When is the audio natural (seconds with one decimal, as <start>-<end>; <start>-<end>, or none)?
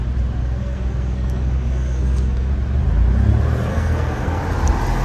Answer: 0.0-0.4; 2.5-3.7; 4.4-5.0